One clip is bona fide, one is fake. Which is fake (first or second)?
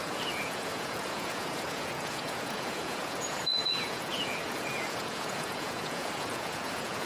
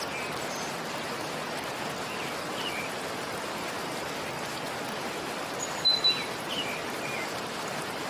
first